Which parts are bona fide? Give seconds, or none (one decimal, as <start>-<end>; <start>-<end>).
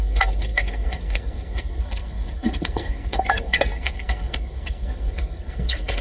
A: none